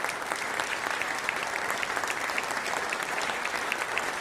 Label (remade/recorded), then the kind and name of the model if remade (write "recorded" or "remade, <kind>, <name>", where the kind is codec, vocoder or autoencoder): remade, vocoder, BigVGAN v2